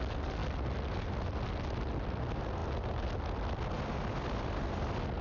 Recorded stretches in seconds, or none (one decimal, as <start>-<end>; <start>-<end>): 0.0-5.2

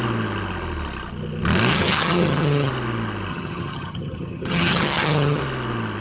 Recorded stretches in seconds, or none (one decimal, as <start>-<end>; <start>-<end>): 0.0-1.7; 2.7-3.3; 5.4-6.0

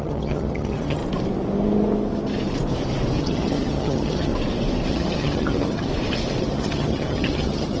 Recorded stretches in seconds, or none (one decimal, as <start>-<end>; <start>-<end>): 1.0-3.2; 4.3-4.9; 5.9-6.4

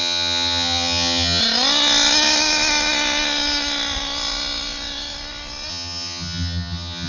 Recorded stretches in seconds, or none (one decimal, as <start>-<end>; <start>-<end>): 1.4-5.7

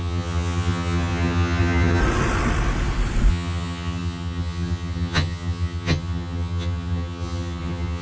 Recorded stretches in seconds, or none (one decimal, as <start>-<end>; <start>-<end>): 2.0-3.3

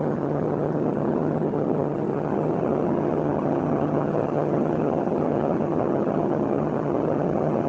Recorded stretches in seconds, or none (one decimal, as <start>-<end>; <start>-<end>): none

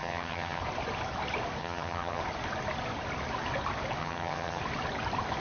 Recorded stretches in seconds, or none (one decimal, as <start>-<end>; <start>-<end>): 0.6-1.6; 2.2-4.0; 4.6-5.4